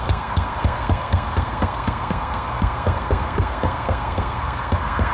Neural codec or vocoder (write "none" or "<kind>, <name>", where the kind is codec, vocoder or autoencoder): codec, SNAC